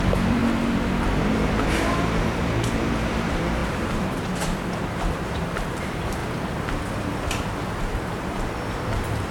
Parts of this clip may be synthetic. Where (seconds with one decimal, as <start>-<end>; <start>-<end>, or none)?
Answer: 0.0-0.4; 1.1-6.2; 7.8-9.3